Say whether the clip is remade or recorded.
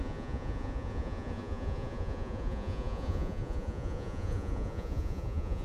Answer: remade